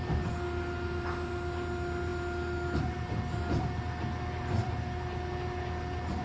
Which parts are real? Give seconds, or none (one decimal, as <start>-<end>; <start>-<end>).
0.0-6.2